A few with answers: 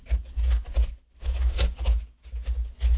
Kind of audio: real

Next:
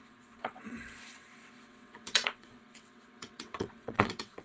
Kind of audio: fake